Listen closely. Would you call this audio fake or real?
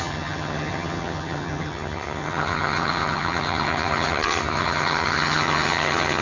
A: fake